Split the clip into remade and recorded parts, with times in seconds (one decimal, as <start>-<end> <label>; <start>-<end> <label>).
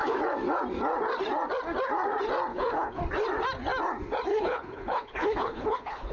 0.0-2.5 recorded; 2.5-3.0 remade; 3.0-4.3 recorded; 4.3-6.1 remade